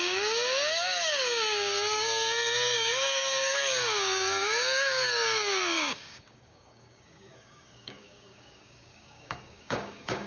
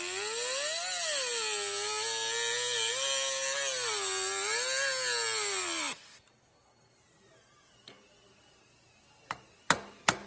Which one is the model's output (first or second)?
first